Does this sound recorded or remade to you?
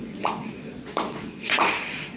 remade